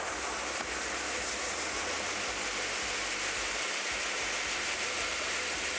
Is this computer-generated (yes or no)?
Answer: no